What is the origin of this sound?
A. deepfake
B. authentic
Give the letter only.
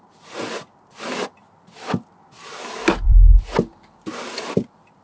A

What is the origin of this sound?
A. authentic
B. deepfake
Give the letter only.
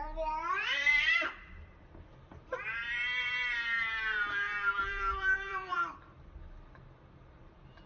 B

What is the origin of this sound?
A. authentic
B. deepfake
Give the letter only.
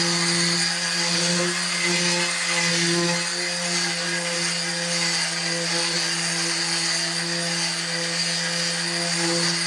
A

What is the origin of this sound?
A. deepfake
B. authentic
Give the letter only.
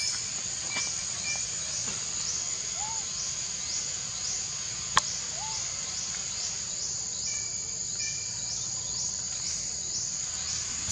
B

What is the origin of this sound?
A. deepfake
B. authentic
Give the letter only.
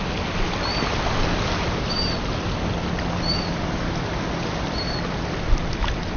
B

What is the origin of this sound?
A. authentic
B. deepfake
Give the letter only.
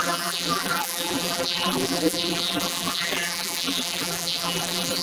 B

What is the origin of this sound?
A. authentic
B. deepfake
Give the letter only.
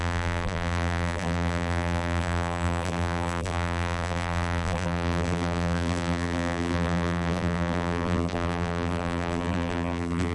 B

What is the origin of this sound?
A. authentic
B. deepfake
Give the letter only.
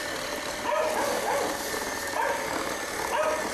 A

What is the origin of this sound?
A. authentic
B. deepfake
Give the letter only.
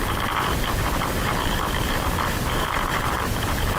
B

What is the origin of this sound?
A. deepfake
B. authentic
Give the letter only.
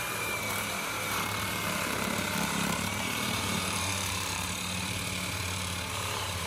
A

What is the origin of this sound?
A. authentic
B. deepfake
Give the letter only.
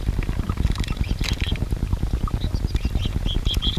B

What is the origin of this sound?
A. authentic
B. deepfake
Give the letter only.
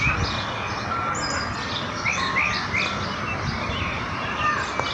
A